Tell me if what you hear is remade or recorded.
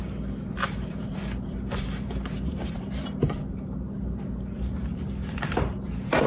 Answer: remade